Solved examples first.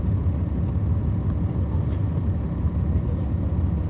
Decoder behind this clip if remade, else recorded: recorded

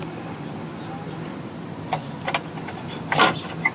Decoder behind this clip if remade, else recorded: recorded